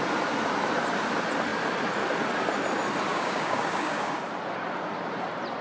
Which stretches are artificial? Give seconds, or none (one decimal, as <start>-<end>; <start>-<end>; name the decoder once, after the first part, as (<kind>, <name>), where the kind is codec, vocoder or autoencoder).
3.1-4.2 (codec, DAC)